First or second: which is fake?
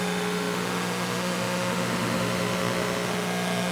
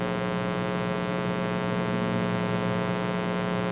first